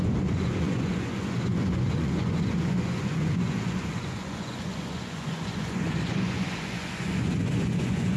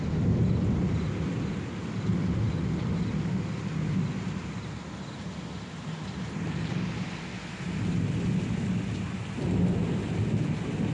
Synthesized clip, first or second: first